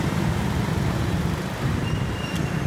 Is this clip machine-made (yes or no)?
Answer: no